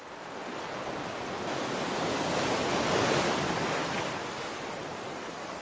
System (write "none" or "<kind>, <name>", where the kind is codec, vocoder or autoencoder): none